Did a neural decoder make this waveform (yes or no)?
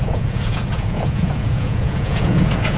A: yes